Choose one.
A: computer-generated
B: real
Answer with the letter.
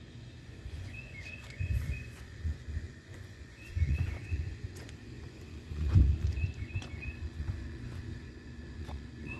A